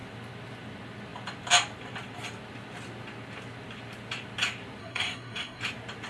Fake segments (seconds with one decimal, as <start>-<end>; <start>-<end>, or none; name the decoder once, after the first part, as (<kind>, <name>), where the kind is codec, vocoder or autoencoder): 4.8-5.6 (codec, SNAC)